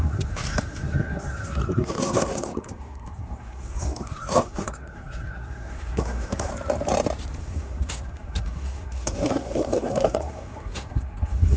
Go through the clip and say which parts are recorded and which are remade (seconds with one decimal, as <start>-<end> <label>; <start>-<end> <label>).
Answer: 0.0-6.5 remade; 6.5-7.4 recorded; 7.4-11.6 remade